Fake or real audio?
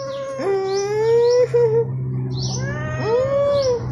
real